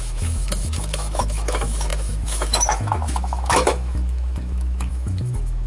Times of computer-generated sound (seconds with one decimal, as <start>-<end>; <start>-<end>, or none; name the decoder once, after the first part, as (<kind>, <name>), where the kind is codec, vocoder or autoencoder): 0.0-5.7 (autoencoder, DAC-VAE)